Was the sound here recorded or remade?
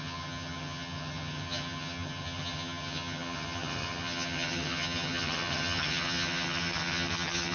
remade